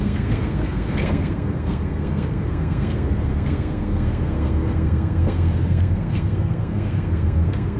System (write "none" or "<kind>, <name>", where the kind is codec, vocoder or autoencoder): codec, SNAC